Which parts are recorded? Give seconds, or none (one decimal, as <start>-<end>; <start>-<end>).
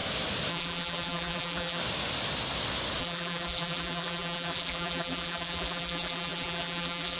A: 0.0-0.5; 1.8-3.0